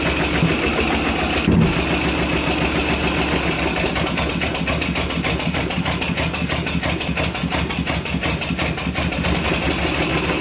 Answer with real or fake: real